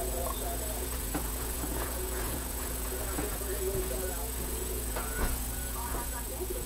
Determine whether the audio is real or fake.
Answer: fake